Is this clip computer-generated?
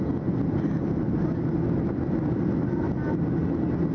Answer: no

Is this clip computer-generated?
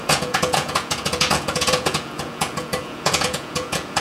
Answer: yes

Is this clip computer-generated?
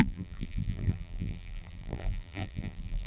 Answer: yes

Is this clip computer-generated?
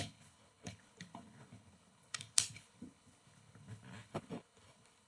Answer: yes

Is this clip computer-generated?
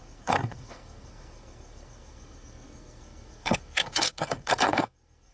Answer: yes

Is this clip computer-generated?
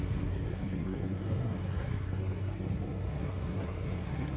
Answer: yes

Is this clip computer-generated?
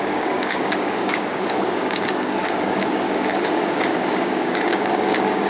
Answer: yes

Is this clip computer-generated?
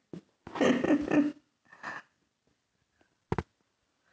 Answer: no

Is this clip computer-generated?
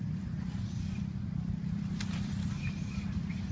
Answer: yes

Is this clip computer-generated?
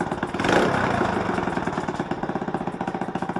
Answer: no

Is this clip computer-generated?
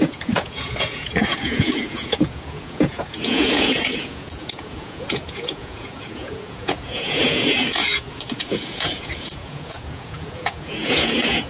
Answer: yes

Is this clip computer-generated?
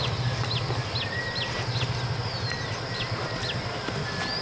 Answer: no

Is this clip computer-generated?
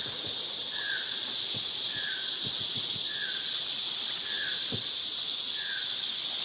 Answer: no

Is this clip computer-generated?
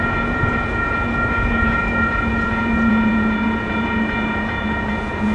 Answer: yes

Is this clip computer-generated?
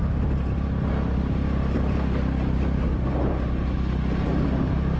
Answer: no